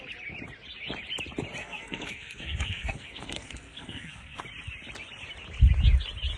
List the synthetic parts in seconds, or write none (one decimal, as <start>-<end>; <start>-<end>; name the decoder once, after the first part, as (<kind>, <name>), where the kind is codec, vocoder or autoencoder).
1.6-4.4 (codec, SNAC)

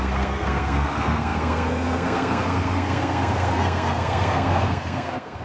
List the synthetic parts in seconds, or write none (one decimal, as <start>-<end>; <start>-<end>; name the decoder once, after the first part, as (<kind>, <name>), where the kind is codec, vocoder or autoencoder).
0.0-5.4 (codec, SNAC)

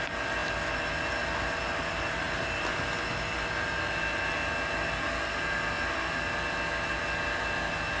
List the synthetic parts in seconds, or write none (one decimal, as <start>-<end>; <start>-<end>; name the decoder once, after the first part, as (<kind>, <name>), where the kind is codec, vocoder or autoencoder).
none

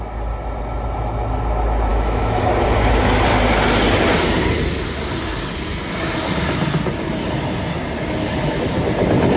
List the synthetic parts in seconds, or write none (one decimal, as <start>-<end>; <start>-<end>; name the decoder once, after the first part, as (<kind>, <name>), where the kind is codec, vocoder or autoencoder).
1.9-2.5 (autoencoder, DAC-VAE)

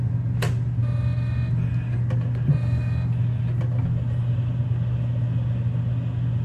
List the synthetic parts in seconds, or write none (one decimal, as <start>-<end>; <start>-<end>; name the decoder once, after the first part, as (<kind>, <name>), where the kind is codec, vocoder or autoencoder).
none

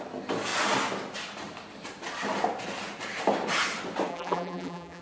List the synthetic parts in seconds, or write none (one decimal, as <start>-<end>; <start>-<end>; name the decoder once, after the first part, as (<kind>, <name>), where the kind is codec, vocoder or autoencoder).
4.1-5.0 (vocoder, BigVGAN v2)